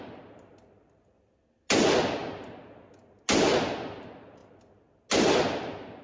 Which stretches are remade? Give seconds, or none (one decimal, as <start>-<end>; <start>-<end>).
none